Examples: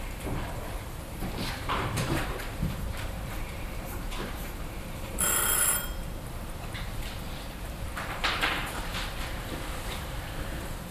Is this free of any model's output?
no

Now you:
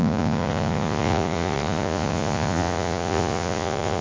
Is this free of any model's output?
no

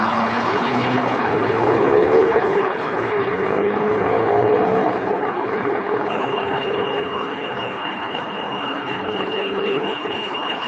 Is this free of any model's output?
no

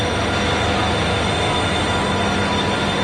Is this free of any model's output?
yes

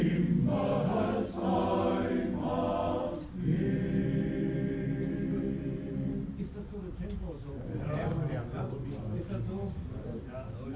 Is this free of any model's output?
yes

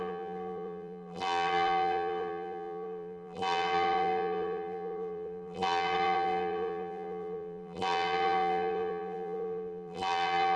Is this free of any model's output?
no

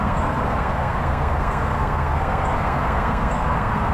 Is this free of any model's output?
no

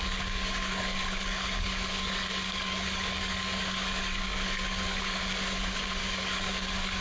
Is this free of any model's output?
no